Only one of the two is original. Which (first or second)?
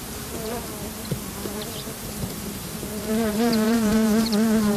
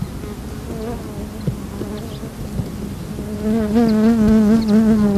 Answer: second